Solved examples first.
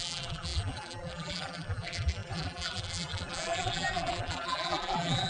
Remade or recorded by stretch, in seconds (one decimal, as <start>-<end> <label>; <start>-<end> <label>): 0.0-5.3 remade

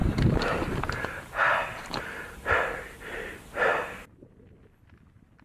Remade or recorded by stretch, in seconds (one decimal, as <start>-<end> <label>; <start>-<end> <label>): 0.0-2.5 remade; 2.5-3.7 recorded; 3.7-4.6 remade; 4.6-5.4 recorded

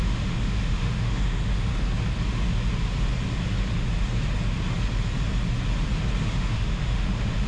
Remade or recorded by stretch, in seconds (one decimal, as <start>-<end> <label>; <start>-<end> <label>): 0.0-1.7 remade; 1.7-6.2 recorded; 6.2-7.5 remade

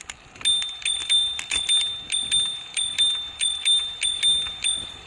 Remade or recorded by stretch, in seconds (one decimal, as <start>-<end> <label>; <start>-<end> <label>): 0.0-1.0 recorded; 1.0-1.6 remade; 1.6-2.7 recorded; 2.7-3.8 remade; 3.8-5.1 recorded

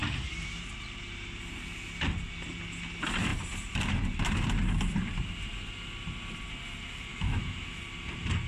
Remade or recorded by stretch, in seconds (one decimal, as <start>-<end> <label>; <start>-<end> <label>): 0.0-7.1 recorded; 7.1-7.8 remade; 7.8-8.5 recorded